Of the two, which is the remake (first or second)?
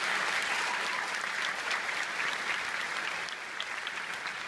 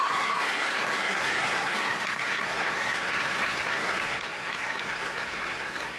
second